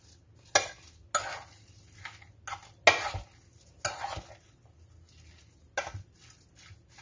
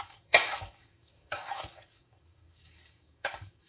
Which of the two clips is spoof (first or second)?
second